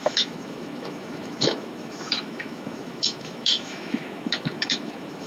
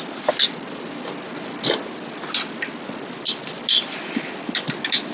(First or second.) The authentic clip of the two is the second